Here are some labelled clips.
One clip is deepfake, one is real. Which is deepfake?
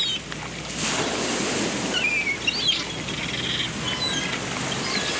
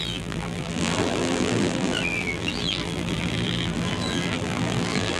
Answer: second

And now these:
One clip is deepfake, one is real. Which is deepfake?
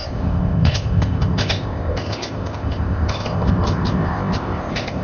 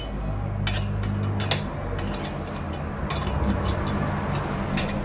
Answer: first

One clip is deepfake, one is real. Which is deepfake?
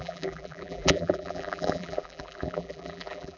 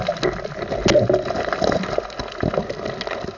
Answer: first